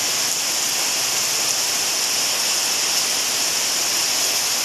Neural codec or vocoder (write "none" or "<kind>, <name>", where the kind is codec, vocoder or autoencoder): none